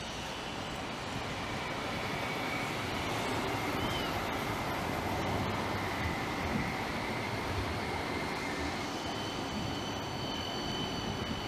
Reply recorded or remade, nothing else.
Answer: recorded